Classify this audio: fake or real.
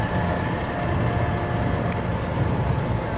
real